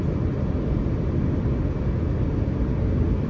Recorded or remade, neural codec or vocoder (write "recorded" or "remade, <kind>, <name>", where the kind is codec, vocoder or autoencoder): recorded